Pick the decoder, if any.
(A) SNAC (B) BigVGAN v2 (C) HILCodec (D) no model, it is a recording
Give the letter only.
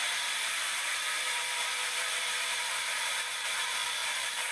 B